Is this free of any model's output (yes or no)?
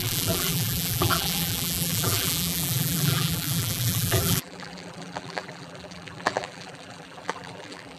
no